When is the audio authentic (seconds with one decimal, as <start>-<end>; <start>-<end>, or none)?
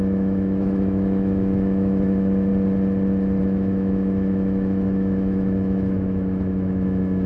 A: 2.5-3.4